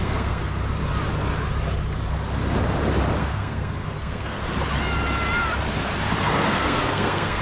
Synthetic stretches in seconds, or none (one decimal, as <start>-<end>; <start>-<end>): 0.0-0.6; 3.2-4.4; 6.2-7.4